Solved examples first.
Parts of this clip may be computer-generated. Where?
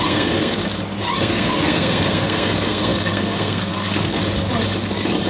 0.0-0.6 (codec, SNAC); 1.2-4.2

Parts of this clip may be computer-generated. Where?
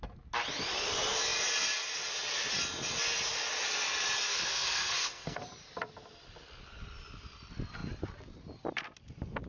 4.3-5.4 (codec, SNAC)